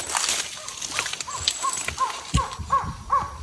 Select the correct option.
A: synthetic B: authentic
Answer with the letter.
B